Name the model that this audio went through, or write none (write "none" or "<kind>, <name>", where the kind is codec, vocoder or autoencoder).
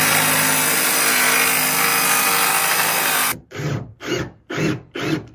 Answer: none